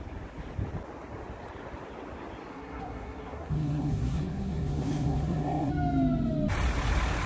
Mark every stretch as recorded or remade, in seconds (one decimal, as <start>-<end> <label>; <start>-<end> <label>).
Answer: 0.0-2.5 recorded; 2.5-5.7 remade; 5.7-7.3 recorded

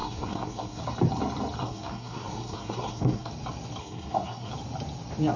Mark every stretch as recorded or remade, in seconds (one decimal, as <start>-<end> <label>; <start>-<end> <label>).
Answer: 0.0-0.8 remade; 0.8-1.6 recorded; 1.6-3.3 remade; 3.3-3.8 recorded; 3.8-4.5 remade; 4.5-5.4 recorded